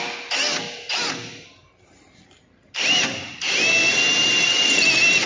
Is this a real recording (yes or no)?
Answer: yes